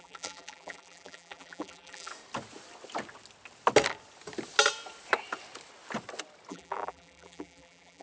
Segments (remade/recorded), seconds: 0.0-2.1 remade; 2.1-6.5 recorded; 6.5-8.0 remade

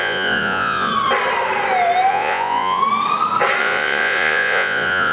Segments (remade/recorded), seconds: 0.0-0.9 remade; 0.9-2.1 recorded; 2.1-2.8 remade; 2.8-3.6 recorded; 3.6-5.1 remade